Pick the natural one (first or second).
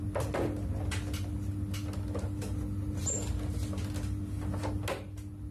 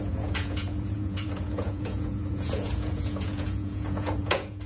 first